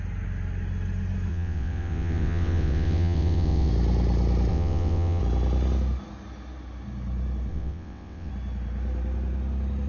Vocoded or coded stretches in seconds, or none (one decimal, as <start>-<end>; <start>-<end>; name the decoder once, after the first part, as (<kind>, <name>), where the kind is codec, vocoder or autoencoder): 1.3-3.7 (vocoder, WaveNeXt); 4.5-5.2; 7.5-8.3